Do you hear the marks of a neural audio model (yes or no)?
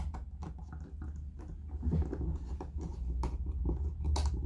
no